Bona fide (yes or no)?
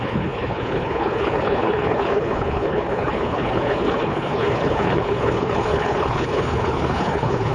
no